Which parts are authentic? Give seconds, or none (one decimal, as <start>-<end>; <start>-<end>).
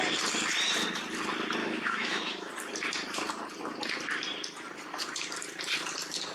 0.0-1.6; 2.5-6.3